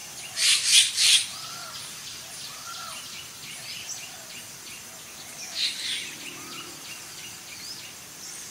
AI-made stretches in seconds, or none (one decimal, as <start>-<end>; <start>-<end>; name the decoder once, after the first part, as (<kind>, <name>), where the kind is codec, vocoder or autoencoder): 0.0-3.0 (vocoder, BigVGAN v2)